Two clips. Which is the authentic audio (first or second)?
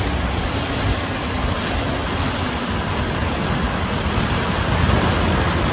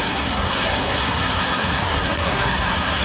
first